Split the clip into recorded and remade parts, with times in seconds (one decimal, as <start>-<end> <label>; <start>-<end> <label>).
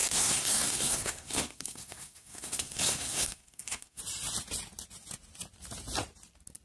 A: 0.0-4.0 remade; 4.0-6.6 recorded